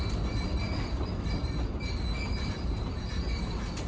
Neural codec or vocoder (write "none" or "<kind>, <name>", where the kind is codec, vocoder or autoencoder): none